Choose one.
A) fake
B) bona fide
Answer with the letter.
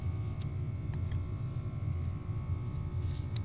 B